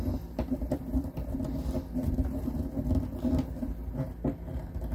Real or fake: real